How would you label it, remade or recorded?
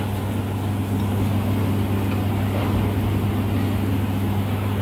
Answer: recorded